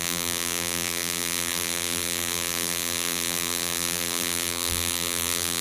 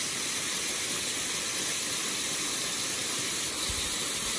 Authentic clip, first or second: second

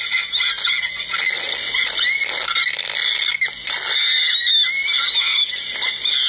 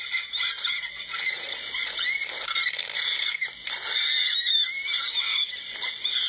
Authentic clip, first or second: first